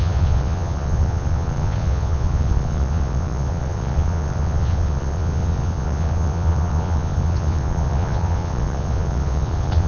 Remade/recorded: remade